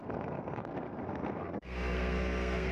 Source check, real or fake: fake